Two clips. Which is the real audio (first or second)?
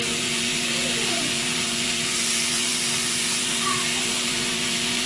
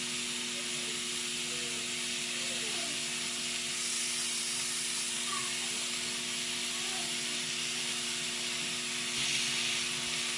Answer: second